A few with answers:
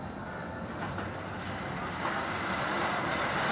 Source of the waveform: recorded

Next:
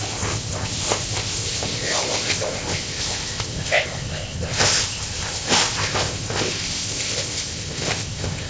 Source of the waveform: remade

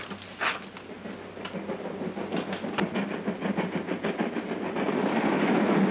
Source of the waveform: recorded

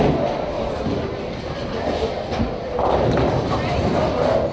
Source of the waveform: recorded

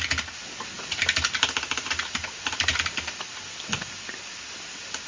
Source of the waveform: recorded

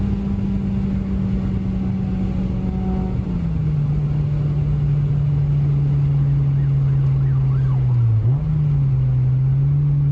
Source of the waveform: recorded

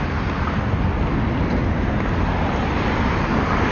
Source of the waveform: recorded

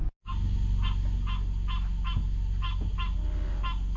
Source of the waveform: recorded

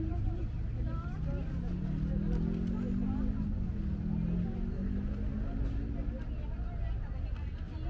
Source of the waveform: recorded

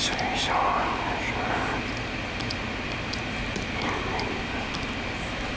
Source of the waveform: recorded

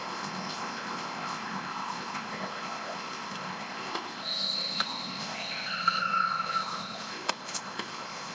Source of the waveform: remade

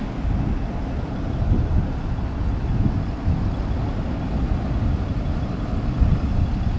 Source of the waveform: recorded